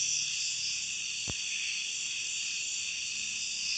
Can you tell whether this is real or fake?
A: fake